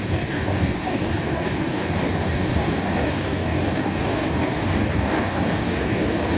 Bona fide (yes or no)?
no